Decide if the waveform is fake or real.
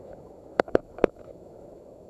fake